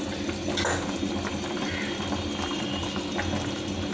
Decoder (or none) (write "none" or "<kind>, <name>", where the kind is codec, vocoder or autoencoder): none